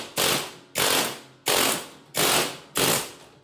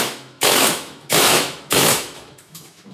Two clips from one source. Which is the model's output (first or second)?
second